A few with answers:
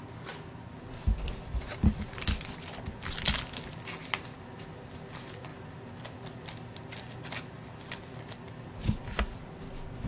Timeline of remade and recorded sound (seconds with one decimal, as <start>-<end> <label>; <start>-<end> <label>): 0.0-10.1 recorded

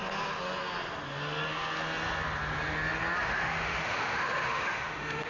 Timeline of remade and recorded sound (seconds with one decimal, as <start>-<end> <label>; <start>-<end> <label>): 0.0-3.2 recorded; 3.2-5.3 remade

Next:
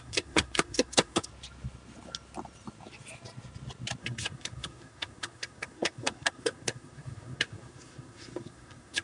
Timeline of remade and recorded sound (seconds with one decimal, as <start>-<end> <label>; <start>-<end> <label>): 0.0-1.3 remade; 1.3-4.0 recorded; 4.0-9.0 remade

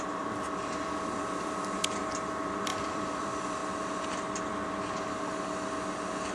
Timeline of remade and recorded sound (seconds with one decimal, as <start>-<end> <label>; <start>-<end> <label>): 0.0-3.6 remade; 3.6-6.3 recorded

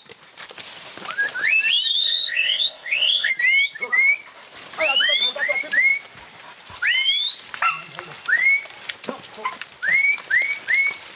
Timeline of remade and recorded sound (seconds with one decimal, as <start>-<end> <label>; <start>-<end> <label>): 0.0-2.0 recorded; 2.0-3.3 remade; 3.3-11.2 recorded